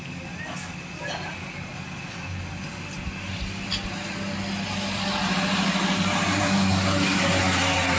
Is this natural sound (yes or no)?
yes